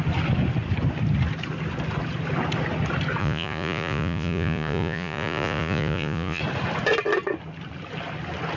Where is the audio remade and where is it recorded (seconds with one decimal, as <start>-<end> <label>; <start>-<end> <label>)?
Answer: 0.0-3.2 recorded; 3.2-6.4 remade; 6.4-8.6 recorded